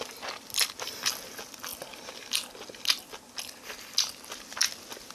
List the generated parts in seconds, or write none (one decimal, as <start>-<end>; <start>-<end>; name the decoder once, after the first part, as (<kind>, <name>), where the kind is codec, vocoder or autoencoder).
none